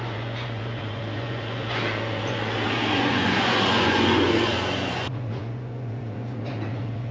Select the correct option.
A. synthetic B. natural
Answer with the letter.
A